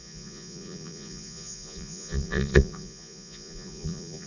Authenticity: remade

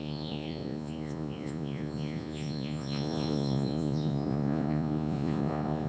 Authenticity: remade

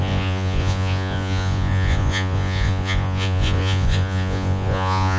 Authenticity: remade